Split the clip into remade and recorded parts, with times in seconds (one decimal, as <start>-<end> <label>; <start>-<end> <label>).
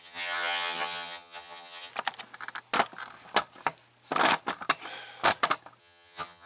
0.0-1.9 remade; 1.9-5.8 recorded; 5.8-6.5 remade